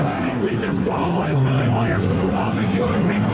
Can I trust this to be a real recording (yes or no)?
no